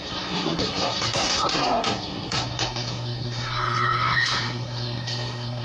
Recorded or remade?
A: remade